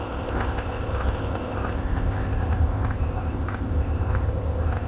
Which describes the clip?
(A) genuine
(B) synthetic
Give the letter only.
B